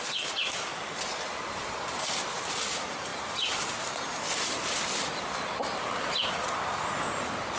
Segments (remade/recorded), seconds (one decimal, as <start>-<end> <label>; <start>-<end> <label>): 0.0-7.6 recorded